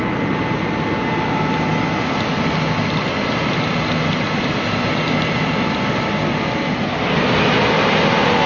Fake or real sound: real